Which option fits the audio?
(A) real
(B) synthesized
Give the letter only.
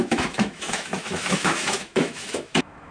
B